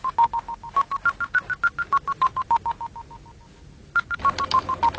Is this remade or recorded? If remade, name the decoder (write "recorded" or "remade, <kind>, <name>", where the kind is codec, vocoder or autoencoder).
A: recorded